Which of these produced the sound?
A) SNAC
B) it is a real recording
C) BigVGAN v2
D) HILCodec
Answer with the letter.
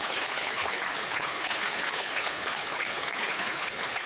D